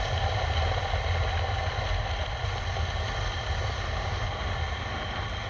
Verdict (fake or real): real